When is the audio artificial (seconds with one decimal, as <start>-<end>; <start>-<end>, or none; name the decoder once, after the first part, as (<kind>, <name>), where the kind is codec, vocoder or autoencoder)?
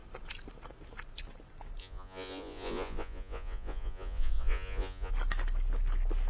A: 1.8-5.1 (vocoder, Vocos)